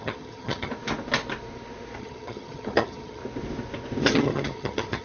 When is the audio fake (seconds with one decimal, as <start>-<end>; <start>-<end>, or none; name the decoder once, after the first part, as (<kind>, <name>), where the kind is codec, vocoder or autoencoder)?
0.0-0.7 (vocoder, HiFi-GAN); 2.0-3.2; 4.0-5.0